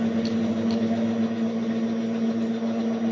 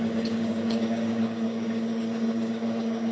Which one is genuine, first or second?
first